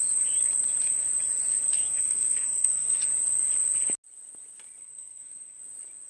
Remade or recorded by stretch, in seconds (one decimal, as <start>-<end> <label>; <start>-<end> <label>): 0.0-1.7 recorded; 1.7-3.0 remade; 3.0-4.8 recorded; 4.8-5.6 remade; 5.6-6.1 recorded